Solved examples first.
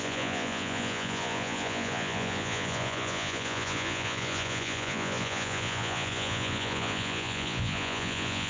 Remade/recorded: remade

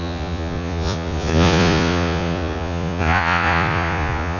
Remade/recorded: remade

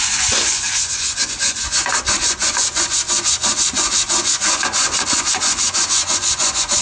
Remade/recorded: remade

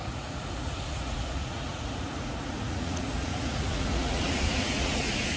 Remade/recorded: remade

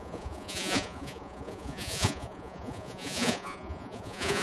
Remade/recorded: remade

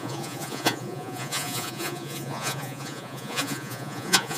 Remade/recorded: remade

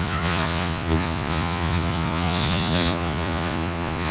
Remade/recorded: remade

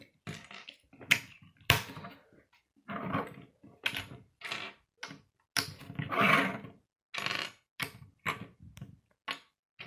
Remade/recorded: recorded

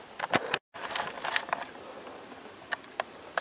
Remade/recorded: recorded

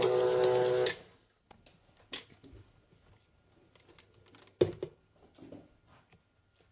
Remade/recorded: recorded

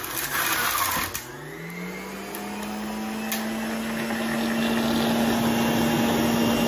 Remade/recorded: recorded